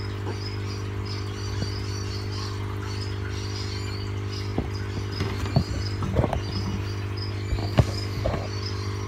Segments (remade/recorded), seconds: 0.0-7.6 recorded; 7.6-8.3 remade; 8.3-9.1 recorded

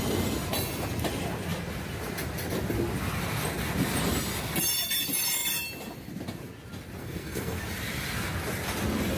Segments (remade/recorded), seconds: 0.0-7.0 recorded; 7.0-7.6 remade; 7.6-9.2 recorded

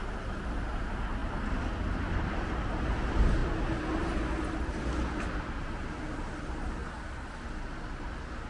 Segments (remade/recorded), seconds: 0.0-8.5 recorded